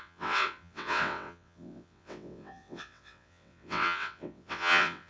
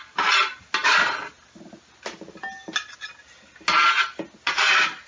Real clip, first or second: second